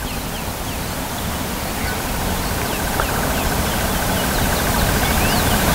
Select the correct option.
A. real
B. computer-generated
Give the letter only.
A